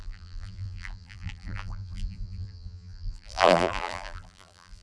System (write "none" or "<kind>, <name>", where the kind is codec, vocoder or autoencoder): vocoder, BigVGAN v2